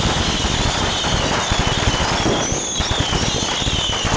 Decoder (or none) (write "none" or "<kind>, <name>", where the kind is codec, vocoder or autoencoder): none